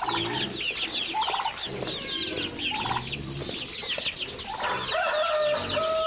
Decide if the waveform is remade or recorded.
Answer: recorded